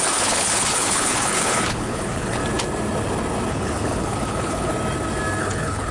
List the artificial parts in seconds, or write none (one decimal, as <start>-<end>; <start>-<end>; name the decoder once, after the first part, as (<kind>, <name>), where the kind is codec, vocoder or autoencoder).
0.0-2.4 (codec, HILCodec); 3.5-4.7; 5.4-5.9